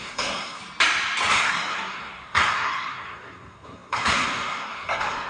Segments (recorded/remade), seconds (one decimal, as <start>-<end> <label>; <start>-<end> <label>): 0.0-0.6 remade; 0.6-1.3 recorded; 1.3-5.3 remade